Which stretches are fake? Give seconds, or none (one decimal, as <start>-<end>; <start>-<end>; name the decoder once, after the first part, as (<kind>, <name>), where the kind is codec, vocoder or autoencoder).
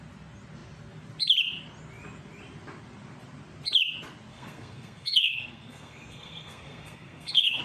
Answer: 4.3-7.6 (codec, SNAC)